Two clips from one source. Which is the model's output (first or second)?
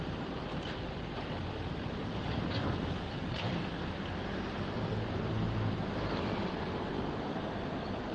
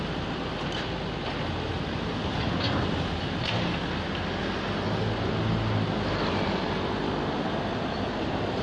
first